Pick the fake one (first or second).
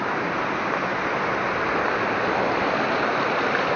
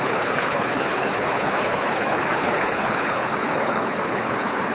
second